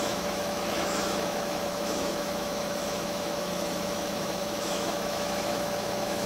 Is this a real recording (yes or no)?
no